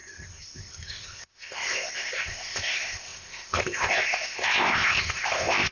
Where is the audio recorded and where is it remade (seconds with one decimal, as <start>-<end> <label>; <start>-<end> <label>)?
0.0-5.7 remade